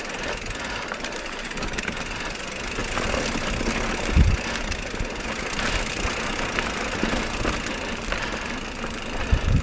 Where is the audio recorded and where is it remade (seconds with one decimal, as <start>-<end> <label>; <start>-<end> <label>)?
0.0-9.6 recorded